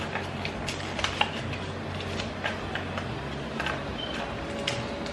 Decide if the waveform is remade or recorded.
recorded